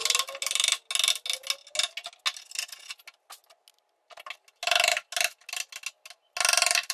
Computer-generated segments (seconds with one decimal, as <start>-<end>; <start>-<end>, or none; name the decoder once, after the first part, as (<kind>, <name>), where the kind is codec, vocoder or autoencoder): none